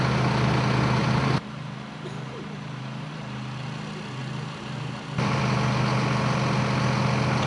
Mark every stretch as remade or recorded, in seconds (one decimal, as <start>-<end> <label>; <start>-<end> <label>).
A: 0.0-1.0 recorded; 1.0-3.1 remade; 3.1-4.2 recorded; 4.2-5.4 remade; 5.4-7.5 recorded